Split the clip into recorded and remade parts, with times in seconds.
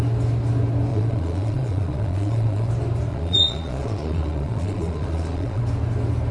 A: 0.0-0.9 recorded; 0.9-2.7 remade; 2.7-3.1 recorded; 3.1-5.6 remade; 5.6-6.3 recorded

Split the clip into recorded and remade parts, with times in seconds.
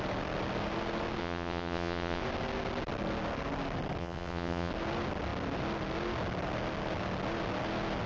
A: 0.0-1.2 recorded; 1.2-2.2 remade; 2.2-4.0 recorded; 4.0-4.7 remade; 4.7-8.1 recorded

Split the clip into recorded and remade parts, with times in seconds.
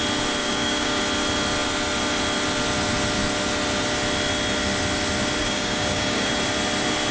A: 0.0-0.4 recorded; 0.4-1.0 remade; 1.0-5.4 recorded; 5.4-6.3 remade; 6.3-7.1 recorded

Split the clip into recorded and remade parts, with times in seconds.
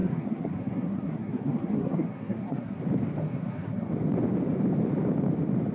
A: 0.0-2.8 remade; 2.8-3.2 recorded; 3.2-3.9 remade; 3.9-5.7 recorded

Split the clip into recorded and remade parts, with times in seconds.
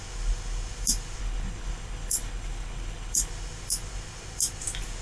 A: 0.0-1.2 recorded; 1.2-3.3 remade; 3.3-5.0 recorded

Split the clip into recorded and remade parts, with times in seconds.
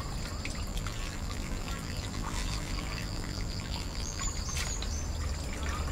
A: 0.0-0.7 recorded; 0.7-4.2 remade; 4.2-5.9 recorded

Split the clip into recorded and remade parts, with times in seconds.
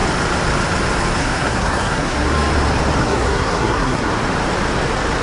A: 0.0-1.2 recorded; 1.2-2.5 remade; 2.5-3.0 recorded; 3.0-4.1 remade; 4.1-5.2 recorded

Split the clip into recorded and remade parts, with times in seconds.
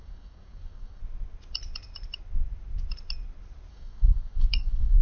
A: 0.0-1.0 remade; 1.0-3.7 recorded; 3.7-5.0 remade